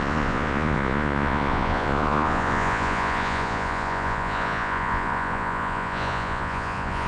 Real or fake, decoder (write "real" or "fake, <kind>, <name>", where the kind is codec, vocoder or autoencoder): fake, vocoder, Vocos